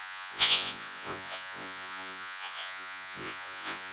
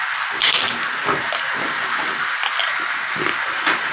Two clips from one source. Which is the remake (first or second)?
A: first